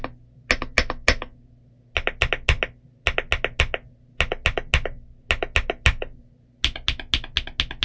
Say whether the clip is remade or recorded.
recorded